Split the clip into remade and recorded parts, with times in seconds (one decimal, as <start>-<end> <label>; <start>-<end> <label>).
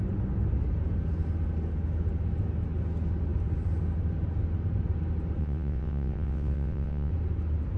0.0-5.4 recorded; 5.4-7.1 remade; 7.1-7.8 recorded